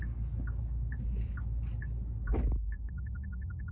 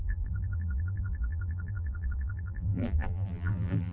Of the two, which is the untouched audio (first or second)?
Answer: first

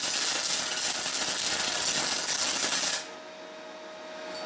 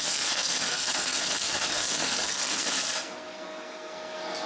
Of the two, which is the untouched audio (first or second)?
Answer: first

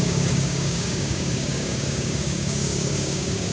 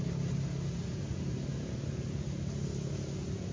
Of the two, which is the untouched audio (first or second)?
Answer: second